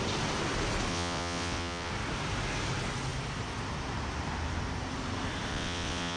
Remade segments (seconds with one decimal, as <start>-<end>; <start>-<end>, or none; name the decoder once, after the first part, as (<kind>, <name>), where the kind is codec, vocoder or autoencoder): 0.9-1.9 (vocoder, WaveNeXt); 5.5-6.2